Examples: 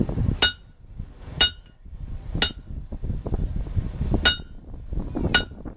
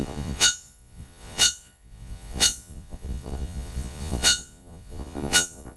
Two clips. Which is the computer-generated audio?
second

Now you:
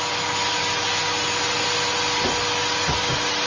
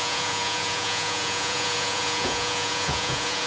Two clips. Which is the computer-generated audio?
second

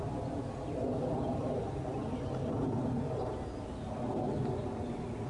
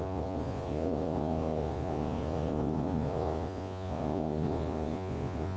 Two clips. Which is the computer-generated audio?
second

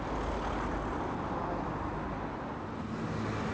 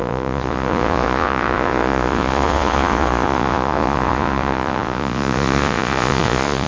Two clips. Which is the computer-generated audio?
second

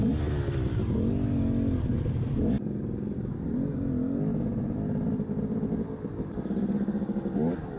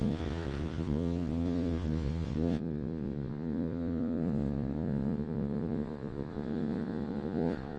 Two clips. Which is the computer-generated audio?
second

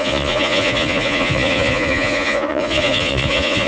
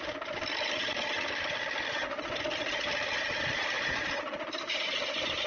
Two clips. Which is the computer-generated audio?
first